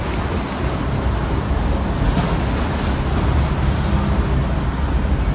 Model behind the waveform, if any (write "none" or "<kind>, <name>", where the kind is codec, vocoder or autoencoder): none